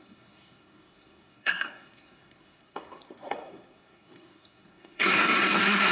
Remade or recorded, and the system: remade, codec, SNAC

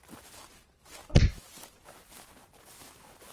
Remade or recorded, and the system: recorded